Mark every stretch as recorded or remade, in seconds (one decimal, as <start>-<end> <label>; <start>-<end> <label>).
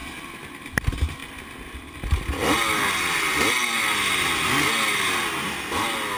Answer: 0.0-6.2 recorded